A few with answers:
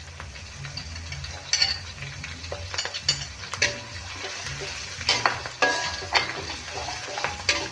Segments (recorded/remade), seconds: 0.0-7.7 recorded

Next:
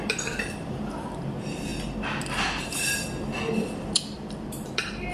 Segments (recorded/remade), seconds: 0.0-1.7 remade; 1.7-3.5 recorded; 3.5-5.1 remade

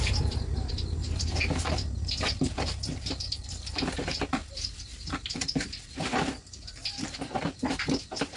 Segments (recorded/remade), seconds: 0.0-8.4 remade